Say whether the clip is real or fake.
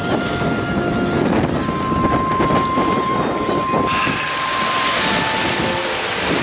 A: real